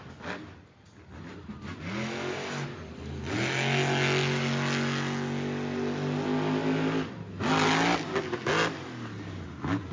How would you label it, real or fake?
real